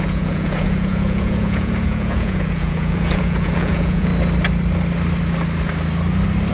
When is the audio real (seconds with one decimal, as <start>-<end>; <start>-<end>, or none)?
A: 4.1-6.5